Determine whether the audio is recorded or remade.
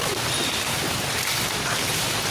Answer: recorded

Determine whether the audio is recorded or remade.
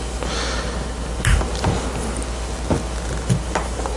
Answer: recorded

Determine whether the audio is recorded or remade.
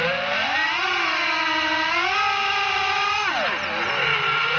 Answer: recorded